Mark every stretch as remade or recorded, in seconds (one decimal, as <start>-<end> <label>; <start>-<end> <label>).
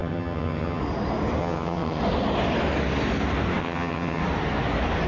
0.0-0.8 remade; 0.8-1.4 recorded; 1.4-2.0 remade; 2.0-3.6 recorded; 3.6-4.2 remade; 4.2-5.1 recorded